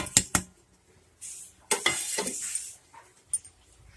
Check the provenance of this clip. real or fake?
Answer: real